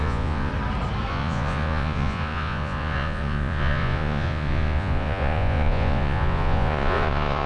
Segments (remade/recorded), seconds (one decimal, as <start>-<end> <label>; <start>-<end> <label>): 0.0-0.5 remade; 0.5-1.1 recorded; 1.1-7.5 remade